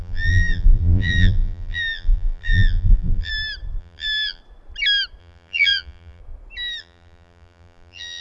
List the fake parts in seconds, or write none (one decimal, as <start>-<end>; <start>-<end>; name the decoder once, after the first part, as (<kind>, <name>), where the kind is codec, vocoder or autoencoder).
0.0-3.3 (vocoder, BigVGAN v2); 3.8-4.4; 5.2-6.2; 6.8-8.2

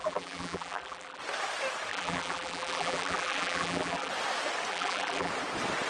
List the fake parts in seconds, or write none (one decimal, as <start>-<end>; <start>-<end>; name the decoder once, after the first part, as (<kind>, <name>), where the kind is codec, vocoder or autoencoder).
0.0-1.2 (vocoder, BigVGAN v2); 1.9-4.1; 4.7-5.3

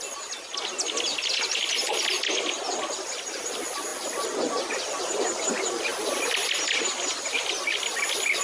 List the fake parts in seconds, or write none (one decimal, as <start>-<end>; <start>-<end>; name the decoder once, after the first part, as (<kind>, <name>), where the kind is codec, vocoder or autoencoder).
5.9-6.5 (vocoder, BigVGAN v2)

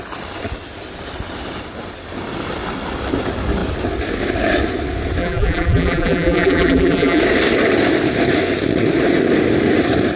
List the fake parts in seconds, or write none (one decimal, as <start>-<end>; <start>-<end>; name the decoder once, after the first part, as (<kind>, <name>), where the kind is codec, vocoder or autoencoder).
5.2-7.2 (vocoder, BigVGAN v2)